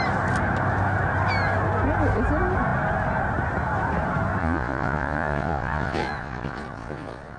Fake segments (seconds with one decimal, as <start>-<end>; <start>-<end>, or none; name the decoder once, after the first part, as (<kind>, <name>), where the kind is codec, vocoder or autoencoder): 4.4-7.4 (vocoder, Vocos)